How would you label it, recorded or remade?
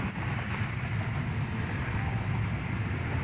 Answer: recorded